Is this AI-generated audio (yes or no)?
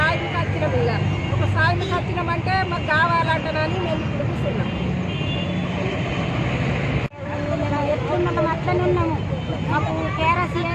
no